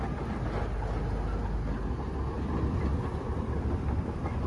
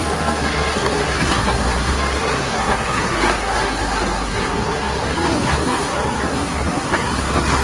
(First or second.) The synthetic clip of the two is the second